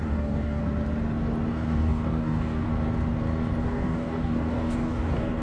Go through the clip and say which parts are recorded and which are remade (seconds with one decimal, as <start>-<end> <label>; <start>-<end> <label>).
0.0-0.6 remade; 0.6-1.5 recorded; 1.5-2.7 remade; 2.7-3.6 recorded; 3.6-5.4 remade